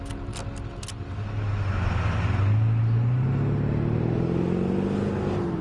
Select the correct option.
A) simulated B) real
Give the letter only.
B